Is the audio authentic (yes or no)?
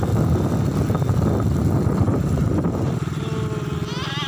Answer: yes